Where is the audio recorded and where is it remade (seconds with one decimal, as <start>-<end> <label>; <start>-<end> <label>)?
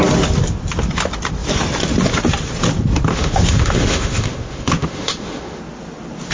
0.0-3.1 recorded; 3.1-5.6 remade; 5.6-6.3 recorded